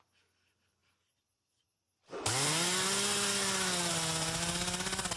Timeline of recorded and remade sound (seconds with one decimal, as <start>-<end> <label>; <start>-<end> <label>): 0.0-5.2 recorded